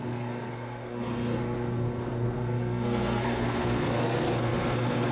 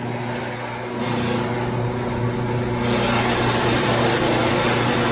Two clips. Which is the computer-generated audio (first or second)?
first